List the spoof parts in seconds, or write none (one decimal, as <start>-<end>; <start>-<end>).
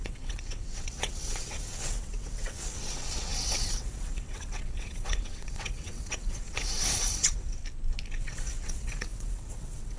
0.0-7.6; 8.2-10.0